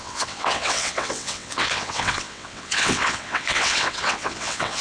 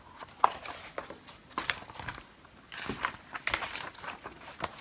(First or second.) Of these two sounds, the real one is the second